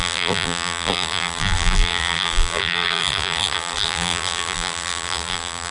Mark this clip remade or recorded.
remade